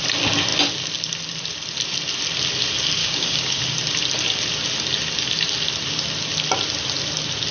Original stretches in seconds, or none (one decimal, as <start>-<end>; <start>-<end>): 0.0-3.0; 3.6-7.5